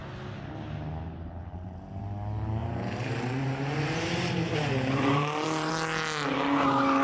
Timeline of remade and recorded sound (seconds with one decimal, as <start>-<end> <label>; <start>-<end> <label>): 0.0-2.6 recorded; 2.6-5.7 remade; 5.7-7.0 recorded